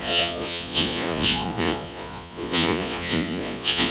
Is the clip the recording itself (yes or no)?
no